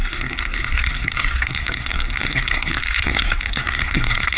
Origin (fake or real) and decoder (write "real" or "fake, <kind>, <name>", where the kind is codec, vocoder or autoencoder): fake, codec, SNAC